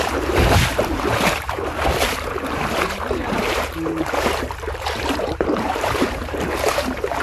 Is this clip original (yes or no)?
no